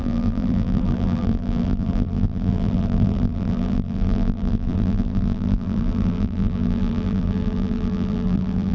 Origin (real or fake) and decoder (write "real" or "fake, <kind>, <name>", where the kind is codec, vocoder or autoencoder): fake, vocoder, BigVGAN v2